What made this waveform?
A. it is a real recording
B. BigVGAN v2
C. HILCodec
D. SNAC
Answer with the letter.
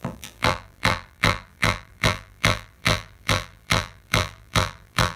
B